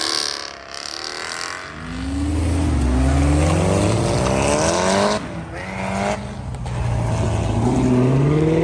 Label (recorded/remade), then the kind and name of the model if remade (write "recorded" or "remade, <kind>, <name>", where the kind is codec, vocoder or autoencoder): recorded